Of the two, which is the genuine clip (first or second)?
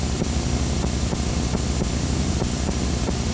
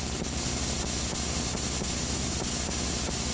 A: second